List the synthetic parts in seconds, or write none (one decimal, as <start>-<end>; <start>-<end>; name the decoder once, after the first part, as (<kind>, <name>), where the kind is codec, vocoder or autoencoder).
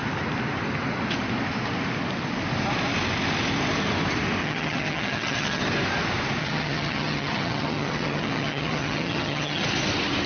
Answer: 4.4-5.6 (vocoder, HiFi-GAN); 6.4-9.6